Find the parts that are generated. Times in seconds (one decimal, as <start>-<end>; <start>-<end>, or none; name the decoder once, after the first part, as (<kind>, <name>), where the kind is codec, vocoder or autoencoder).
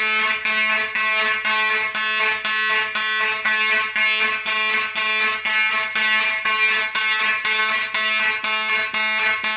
none